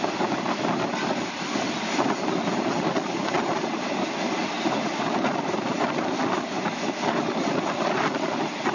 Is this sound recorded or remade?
recorded